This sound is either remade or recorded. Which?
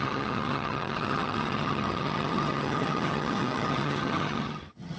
remade